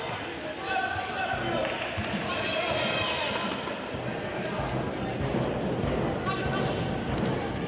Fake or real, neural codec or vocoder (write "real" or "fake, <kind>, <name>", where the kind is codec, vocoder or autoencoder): real